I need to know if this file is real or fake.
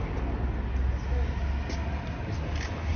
real